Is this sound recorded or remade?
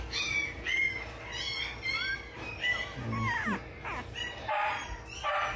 recorded